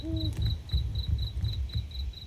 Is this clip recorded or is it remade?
recorded